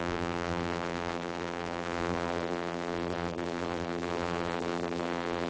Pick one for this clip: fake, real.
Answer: fake